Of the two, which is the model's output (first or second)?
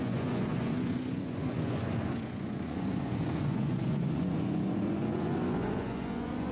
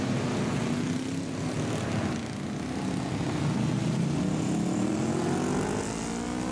first